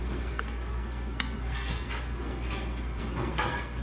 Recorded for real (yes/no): no